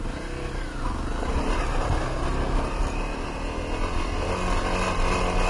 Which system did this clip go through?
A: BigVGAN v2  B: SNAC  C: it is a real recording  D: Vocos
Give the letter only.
C